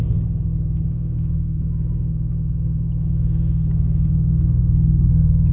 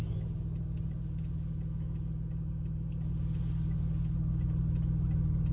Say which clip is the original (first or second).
second